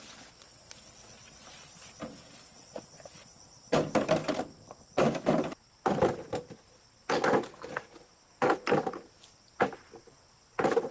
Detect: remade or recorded recorded